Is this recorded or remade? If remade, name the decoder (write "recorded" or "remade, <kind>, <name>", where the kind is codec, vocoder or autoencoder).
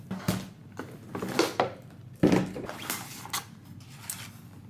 recorded